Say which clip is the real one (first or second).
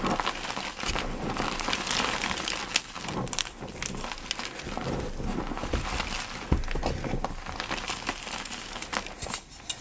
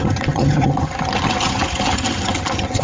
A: first